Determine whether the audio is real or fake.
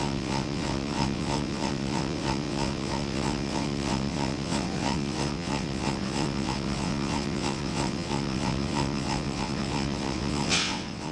fake